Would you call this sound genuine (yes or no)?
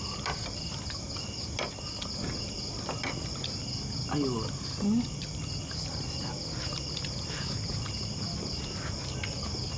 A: yes